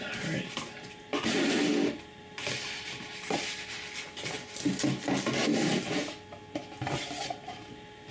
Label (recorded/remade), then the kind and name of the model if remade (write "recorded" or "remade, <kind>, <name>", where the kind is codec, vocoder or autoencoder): recorded